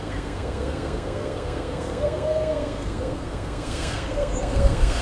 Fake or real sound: fake